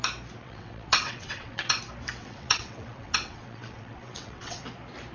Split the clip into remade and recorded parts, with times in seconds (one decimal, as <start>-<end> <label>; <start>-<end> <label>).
0.0-0.4 recorded; 0.4-1.8 remade; 1.8-2.2 recorded; 2.2-4.6 remade; 4.6-5.1 recorded